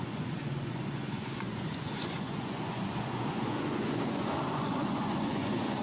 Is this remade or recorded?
remade